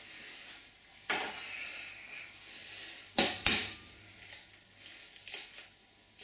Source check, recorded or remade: recorded